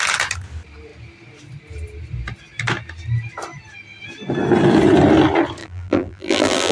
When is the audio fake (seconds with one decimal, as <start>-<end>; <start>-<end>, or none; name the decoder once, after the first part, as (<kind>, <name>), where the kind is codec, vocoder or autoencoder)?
5.6-6.7 (vocoder, BigVGAN v2)